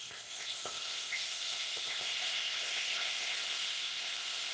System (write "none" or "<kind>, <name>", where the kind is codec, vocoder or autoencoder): codec, ZipCodec